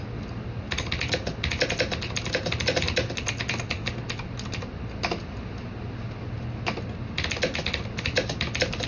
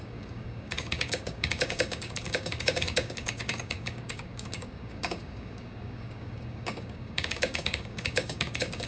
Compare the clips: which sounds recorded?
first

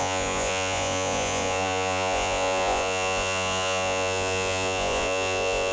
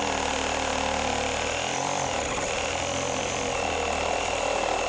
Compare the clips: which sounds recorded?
second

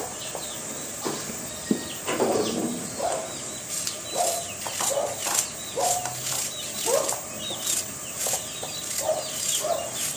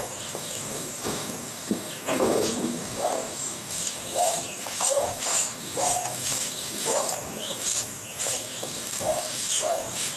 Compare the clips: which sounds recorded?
first